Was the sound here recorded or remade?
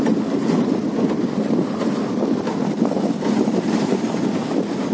recorded